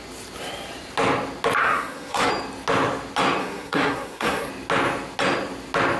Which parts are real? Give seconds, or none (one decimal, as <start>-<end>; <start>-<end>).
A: 0.0-1.6; 2.3-3.4; 4.5-6.0